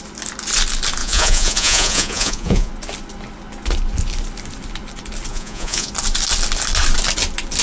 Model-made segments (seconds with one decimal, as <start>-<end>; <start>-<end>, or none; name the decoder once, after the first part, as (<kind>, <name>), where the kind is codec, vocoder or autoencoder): 1.0-2.7 (vocoder, Vocos); 5.3-5.9

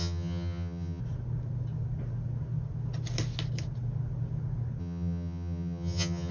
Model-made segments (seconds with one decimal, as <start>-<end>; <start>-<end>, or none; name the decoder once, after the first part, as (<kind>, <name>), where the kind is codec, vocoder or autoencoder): 0.0-1.0 (vocoder, HiFi-GAN); 4.8-6.3

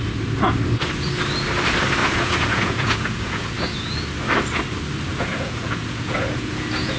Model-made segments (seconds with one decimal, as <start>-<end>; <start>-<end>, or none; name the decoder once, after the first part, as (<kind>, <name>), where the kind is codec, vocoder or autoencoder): 2.0-4.0 (vocoder, Vocos); 5.1-7.0